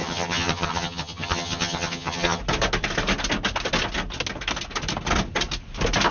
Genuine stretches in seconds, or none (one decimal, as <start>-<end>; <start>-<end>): 2.4-6.1